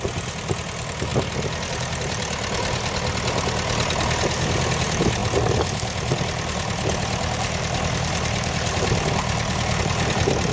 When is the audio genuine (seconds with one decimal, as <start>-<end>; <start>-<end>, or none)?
0.0-10.5